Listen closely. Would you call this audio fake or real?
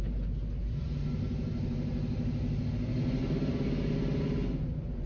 real